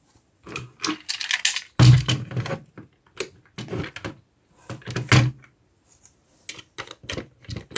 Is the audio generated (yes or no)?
no